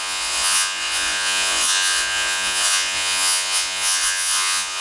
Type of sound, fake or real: fake